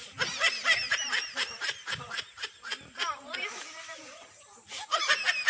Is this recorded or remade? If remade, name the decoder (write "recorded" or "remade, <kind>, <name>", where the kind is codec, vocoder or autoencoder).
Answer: remade, vocoder, BigVGAN v2